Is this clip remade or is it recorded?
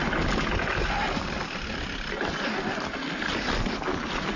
recorded